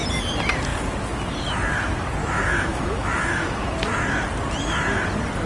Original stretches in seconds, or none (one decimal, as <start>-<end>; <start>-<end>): 0.0-2.2; 3.7-5.5